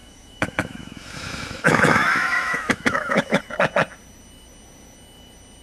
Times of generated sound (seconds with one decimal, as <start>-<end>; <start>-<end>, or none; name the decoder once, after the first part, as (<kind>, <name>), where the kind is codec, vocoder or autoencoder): 0.0-3.4 (autoencoder, DAC-VAE)